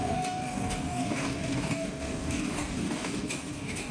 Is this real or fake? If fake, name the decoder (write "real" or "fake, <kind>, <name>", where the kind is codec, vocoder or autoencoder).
fake, codec, DAC